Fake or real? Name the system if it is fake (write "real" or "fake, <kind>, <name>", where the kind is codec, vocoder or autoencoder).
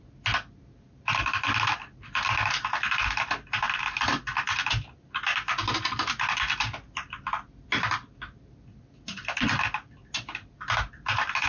real